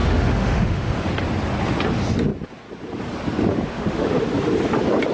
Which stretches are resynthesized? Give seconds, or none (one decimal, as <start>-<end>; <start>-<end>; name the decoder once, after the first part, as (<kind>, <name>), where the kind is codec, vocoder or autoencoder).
0.0-1.1 (autoencoder, DAC-VAE); 3.5-4.1